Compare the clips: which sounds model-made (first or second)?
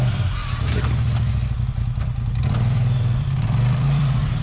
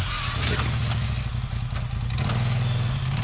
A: first